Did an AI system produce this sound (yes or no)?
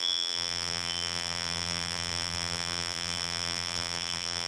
yes